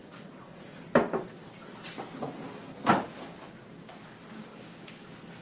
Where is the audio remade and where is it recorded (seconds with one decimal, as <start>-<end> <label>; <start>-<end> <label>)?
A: 0.0-0.8 remade; 0.8-5.4 recorded